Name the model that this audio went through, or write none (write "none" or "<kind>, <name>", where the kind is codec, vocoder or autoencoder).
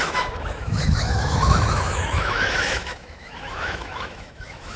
autoencoder, DAC-VAE